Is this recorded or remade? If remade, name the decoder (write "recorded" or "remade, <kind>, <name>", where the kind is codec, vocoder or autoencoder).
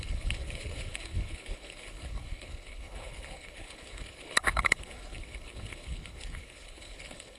remade, codec, HILCodec